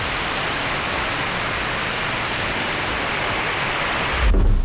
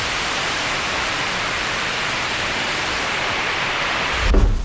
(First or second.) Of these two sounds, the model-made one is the second